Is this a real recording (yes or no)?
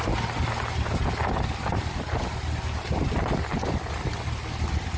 yes